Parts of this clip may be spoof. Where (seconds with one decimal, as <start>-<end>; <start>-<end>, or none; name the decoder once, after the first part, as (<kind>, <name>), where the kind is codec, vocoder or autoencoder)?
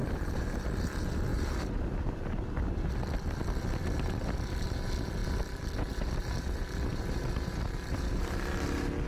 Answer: 0.0-0.6 (vocoder, BigVGAN v2); 1.3-2.4